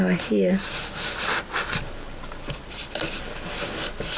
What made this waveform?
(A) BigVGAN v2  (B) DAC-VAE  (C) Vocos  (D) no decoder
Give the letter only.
D